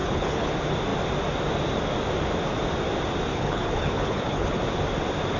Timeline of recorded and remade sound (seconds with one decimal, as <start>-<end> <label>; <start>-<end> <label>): 0.0-0.5 remade; 0.5-3.3 recorded; 3.3-4.6 remade; 4.6-5.4 recorded